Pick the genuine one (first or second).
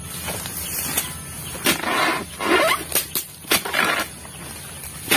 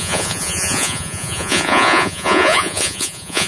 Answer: first